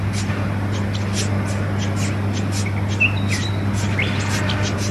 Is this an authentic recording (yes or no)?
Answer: yes